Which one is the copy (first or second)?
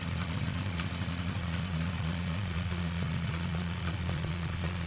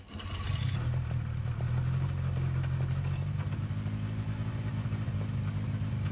first